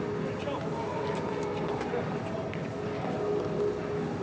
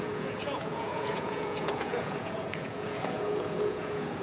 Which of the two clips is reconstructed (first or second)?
second